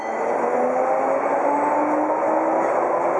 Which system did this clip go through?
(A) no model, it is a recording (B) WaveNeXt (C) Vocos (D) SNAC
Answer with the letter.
A